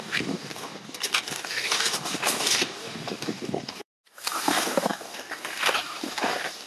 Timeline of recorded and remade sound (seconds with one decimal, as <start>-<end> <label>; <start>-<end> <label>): 0.0-6.7 remade